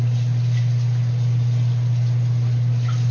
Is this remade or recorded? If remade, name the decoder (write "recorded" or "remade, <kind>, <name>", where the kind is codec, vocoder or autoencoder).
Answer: recorded